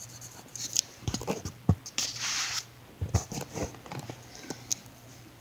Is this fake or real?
fake